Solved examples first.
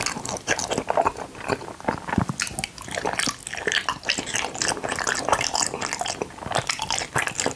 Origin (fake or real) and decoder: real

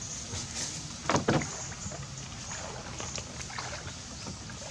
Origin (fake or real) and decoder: real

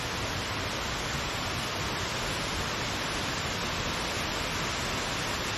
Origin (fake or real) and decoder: real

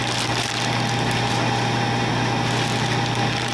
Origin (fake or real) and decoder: real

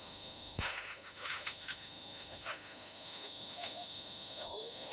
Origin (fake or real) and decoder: fake, autoencoder, DAC-VAE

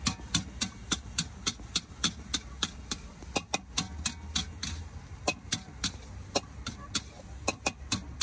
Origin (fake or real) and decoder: real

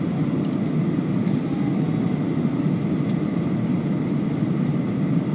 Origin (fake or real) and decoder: real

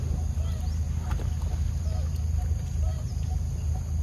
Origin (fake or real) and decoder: real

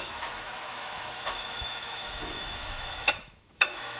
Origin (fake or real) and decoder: fake, autoencoder, DAC-VAE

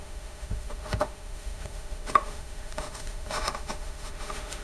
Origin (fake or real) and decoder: fake, autoencoder, DAC-VAE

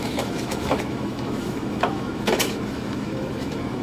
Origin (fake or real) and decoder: fake, autoencoder, DAC-VAE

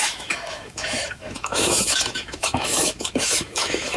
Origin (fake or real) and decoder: fake, autoencoder, DAC-VAE